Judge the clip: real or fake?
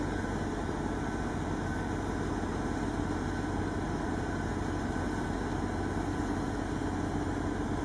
real